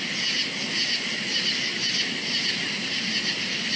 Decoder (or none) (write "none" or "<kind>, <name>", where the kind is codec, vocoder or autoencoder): none